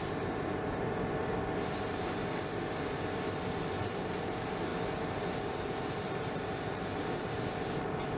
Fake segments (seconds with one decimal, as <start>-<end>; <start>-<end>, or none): 0.0-2.2; 3.8-4.7; 5.5-8.2